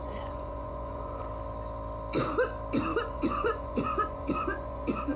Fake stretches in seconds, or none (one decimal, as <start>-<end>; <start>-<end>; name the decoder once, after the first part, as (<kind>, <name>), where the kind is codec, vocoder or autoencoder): 0.0-1.2 (vocoder, Vocos); 3.0-5.2